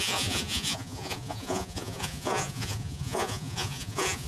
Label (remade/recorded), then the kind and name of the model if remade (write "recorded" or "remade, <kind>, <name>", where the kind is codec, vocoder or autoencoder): remade, vocoder, Vocos